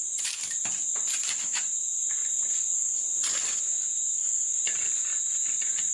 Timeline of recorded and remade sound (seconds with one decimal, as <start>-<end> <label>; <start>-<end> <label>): 0.0-2.2 remade; 2.2-5.9 recorded